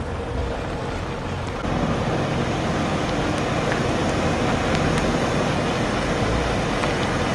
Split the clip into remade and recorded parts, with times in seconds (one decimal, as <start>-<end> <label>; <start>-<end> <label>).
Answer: 0.0-7.3 recorded